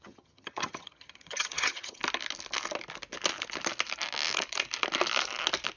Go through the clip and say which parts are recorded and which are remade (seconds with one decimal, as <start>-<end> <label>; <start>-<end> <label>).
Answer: 0.0-2.0 remade; 2.0-5.8 recorded